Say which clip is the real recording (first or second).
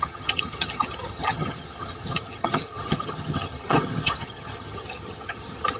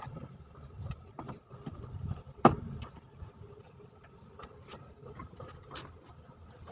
second